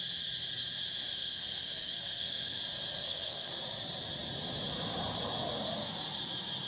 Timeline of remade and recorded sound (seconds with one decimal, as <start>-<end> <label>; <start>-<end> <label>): 0.0-1.2 recorded; 1.2-2.6 remade; 2.6-3.0 recorded; 3.0-3.5 remade; 3.5-6.7 recorded